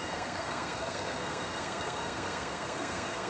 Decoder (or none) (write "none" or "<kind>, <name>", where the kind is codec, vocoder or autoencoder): codec, SNAC